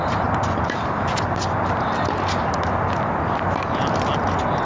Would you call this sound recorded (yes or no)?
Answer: yes